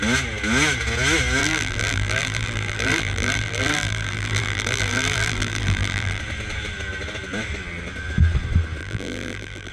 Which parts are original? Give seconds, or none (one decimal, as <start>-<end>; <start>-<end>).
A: 0.0-1.4; 6.2-8.8